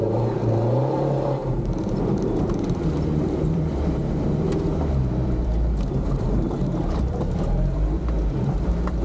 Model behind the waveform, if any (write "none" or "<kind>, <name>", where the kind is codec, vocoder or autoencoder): vocoder, BigVGAN v2